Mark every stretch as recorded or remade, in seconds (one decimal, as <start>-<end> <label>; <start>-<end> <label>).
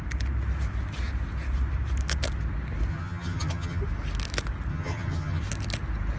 0.0-2.9 recorded; 2.9-3.8 remade; 3.8-4.7 recorded; 4.7-5.4 remade; 5.4-6.2 recorded